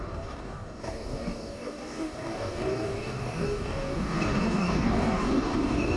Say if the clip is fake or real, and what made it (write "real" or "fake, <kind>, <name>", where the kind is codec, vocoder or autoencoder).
fake, codec, DAC